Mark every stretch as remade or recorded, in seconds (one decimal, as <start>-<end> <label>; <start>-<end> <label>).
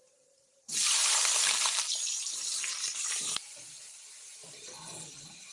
0.0-5.5 remade